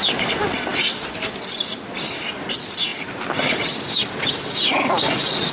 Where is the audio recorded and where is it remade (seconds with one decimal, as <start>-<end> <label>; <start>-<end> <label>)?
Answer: 0.0-5.5 recorded